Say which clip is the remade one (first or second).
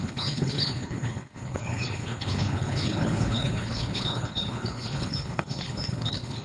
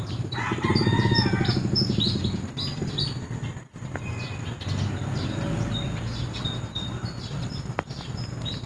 first